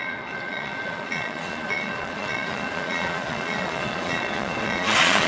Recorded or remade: remade